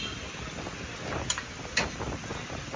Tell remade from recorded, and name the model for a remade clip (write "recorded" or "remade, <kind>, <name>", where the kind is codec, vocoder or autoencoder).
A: recorded